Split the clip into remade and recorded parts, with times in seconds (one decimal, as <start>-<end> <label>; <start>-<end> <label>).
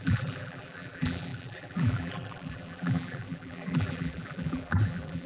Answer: 0.0-5.3 remade